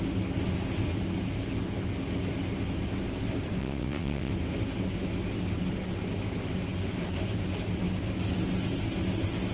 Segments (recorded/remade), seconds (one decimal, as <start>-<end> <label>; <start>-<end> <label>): 0.0-3.6 recorded; 3.6-4.3 remade; 4.3-9.5 recorded